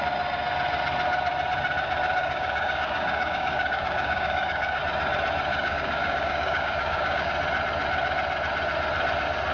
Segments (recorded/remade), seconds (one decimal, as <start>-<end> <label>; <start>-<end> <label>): 0.0-2.2 recorded; 2.2-4.8 remade; 4.8-5.5 recorded; 5.5-7.3 remade; 7.3-9.5 recorded